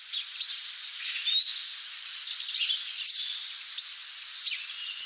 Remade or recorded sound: recorded